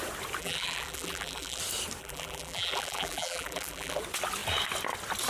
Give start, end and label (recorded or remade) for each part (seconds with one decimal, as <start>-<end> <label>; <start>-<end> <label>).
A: 0.0-0.4 recorded; 0.4-1.6 remade; 1.6-2.0 recorded; 2.0-4.0 remade; 4.0-5.3 recorded